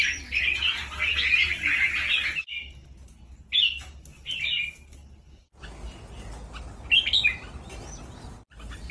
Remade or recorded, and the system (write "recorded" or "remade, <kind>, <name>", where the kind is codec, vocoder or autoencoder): recorded